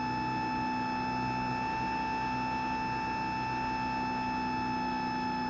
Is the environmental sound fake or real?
real